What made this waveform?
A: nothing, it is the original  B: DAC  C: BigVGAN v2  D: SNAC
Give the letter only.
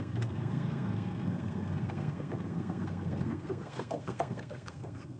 D